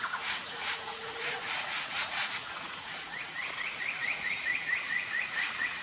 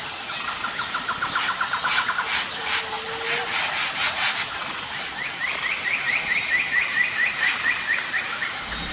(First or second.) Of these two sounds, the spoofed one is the first